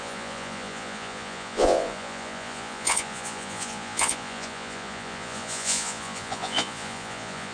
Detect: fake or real fake